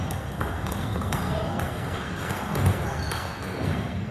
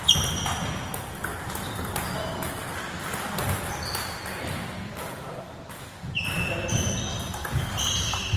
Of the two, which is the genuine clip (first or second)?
second